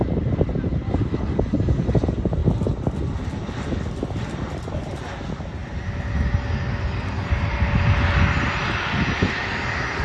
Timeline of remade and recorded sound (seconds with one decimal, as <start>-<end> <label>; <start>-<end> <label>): 0.0-10.0 recorded